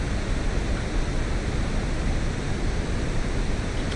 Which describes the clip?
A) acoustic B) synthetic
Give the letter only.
A